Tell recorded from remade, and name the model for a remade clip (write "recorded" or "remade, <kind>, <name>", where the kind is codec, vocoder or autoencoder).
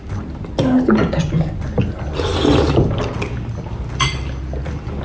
recorded